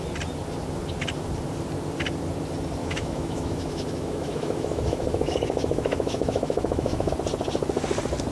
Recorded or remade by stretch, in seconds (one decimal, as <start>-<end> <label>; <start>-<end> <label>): 0.0-2.8 recorded; 2.8-7.1 remade; 7.1-8.3 recorded